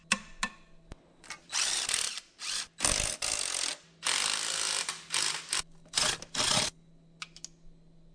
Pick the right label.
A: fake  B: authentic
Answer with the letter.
B